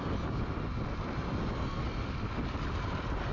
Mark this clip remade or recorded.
recorded